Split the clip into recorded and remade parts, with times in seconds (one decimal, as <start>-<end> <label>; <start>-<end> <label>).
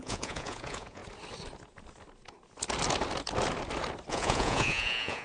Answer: 0.0-1.0 remade; 1.0-4.1 recorded; 4.1-5.2 remade